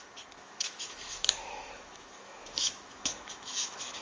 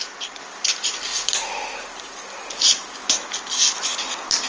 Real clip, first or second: second